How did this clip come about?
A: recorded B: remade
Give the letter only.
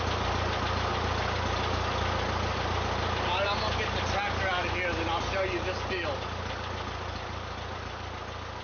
A